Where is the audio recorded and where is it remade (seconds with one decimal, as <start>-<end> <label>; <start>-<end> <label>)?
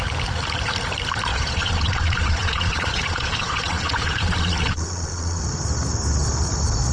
0.0-1.3 recorded; 1.3-5.4 remade; 5.4-6.9 recorded